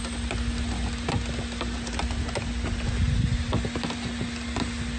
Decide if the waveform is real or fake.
real